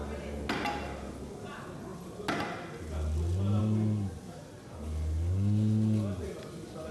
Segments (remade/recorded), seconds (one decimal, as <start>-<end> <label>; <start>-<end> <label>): 0.0-6.9 recorded